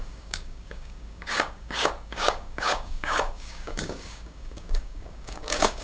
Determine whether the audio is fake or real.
fake